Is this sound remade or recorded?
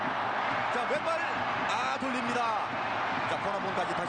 recorded